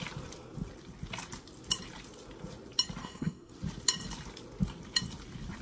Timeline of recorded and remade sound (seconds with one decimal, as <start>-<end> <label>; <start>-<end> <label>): 0.0-3.0 recorded; 3.0-3.5 remade; 3.5-5.6 recorded